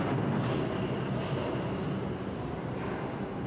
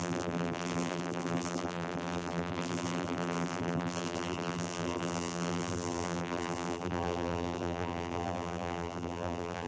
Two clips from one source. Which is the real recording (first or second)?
first